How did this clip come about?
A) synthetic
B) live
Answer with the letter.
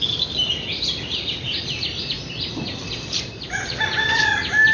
B